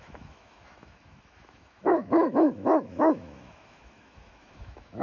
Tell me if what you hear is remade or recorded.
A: remade